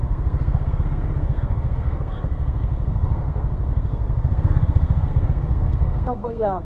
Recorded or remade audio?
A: remade